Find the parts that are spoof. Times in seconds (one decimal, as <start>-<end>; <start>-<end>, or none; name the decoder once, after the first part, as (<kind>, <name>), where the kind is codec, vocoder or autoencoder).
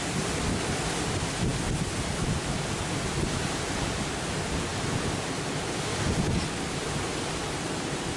none